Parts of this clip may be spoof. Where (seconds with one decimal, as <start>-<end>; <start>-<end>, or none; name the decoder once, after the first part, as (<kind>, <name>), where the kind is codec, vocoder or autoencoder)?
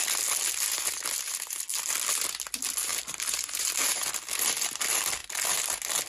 2.9-3.7 (vocoder, BigVGAN v2)